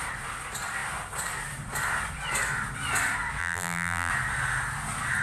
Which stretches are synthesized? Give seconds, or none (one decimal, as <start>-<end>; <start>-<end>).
3.4-4.1